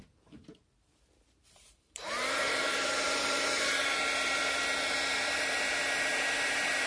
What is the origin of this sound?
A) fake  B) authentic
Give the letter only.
A